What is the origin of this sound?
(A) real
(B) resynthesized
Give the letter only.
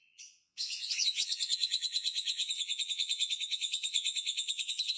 B